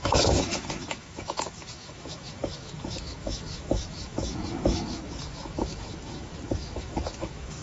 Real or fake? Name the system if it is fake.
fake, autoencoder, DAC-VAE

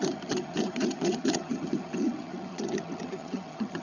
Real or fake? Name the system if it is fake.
fake, vocoder, HiFi-GAN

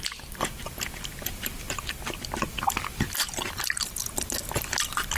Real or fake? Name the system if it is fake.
real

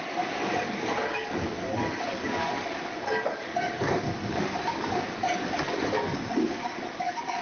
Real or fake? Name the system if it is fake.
fake, codec, DAC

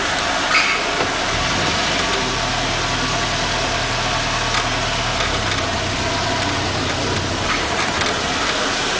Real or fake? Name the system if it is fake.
real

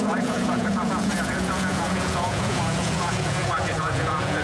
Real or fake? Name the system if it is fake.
fake, vocoder, Vocos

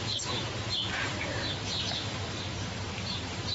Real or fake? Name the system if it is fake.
fake, vocoder, BigVGAN v2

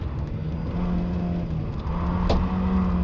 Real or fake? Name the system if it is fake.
real